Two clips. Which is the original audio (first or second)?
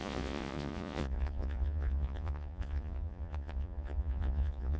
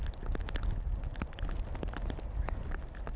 second